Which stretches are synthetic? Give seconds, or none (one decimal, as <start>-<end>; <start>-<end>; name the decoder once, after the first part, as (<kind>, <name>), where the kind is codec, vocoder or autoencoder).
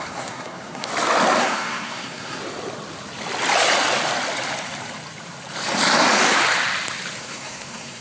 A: 0.0-0.9 (codec, SNAC); 1.4-2.4; 7.2-8.0